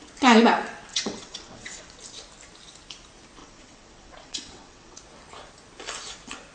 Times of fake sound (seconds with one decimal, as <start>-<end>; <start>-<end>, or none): 0.9-2.0; 3.4-5.0